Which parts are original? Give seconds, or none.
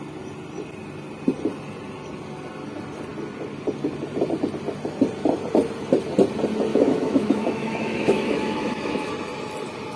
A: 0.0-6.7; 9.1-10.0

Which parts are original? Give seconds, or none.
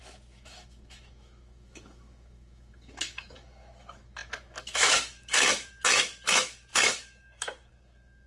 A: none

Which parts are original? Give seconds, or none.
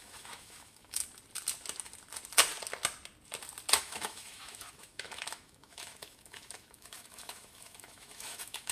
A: 1.0-3.8